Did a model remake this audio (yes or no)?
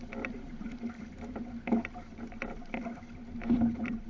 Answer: yes